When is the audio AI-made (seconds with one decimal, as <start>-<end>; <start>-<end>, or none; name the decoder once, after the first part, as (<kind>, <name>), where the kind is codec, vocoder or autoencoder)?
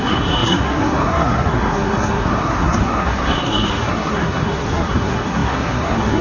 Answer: 0.0-6.2 (codec, SNAC)